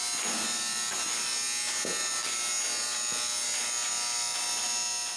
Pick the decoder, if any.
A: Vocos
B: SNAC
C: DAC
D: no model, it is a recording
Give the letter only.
D